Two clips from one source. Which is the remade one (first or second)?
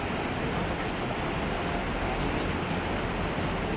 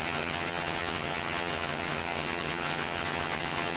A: second